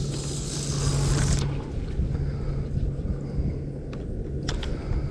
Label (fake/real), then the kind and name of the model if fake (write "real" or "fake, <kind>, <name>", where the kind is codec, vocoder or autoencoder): real